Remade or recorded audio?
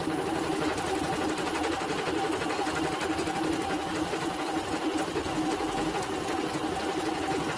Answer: recorded